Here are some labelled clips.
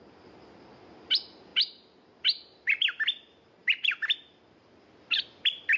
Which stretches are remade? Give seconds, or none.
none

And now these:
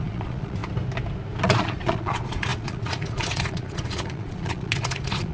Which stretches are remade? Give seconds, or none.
0.0-0.6 (vocoder, Vocos); 1.4-5.3

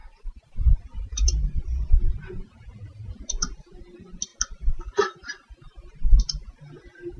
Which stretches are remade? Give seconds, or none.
0.0-3.8 (vocoder, Vocos)

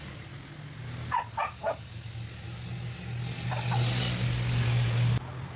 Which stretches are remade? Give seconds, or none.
none

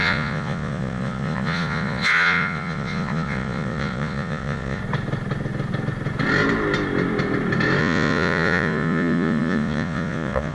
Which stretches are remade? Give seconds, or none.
0.0-4.8 (vocoder, Vocos); 7.8-10.5

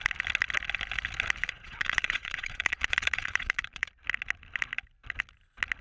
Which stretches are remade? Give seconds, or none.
1.4-3.9 (vocoder, Vocos)

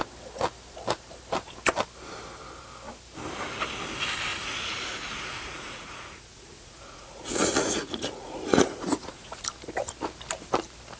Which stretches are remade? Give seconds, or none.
4.3-9.4 (vocoder, Vocos)

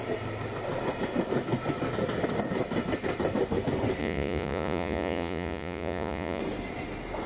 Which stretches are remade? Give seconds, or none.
4.0-6.4 (vocoder, Vocos)